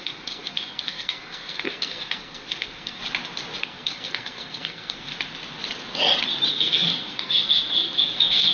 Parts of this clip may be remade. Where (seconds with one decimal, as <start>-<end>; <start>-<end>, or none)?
0.0-3.0; 3.6-5.1; 6.5-8.5